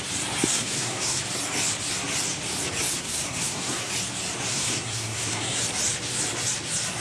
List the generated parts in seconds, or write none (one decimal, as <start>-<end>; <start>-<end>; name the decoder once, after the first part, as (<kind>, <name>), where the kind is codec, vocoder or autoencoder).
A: 0.5-1.2 (codec, SNAC); 2.9-3.9; 4.5-5.6